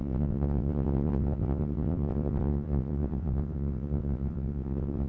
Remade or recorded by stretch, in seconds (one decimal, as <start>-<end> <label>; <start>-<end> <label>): 0.0-5.1 remade